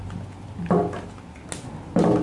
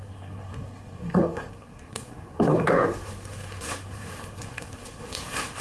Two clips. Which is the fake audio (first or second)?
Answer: second